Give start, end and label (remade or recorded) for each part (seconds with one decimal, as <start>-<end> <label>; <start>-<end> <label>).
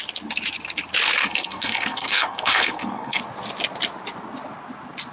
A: 0.0-1.2 recorded; 1.2-3.2 remade; 3.2-5.1 recorded